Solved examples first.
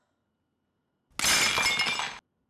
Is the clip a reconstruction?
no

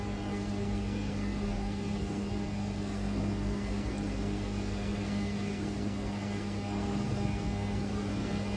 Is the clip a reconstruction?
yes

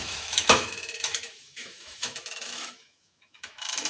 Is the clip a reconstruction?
yes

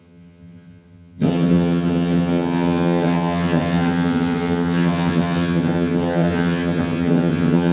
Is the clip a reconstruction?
yes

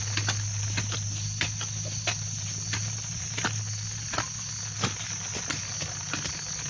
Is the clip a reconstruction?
no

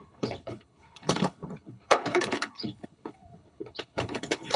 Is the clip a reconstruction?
yes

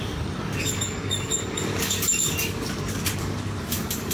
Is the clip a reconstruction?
yes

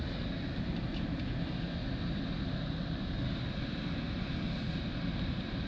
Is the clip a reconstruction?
no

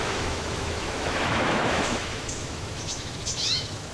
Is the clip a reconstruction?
yes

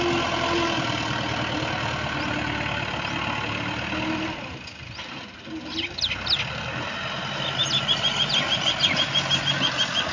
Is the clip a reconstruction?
no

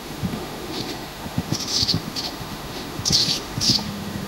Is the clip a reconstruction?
yes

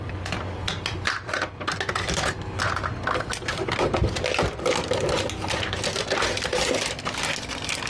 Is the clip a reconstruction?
no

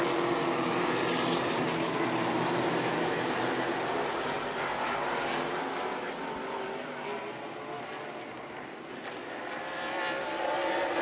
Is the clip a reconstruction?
no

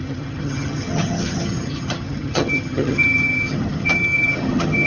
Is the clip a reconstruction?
yes